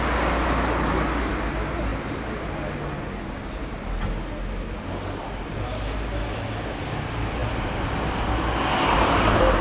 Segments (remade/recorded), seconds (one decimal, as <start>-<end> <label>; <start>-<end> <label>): 0.0-9.6 recorded